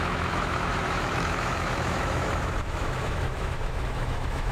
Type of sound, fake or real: fake